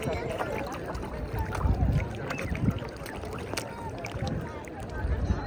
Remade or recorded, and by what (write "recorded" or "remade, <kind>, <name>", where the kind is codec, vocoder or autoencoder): recorded